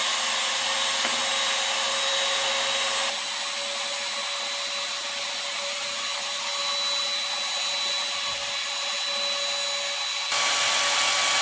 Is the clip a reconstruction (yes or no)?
no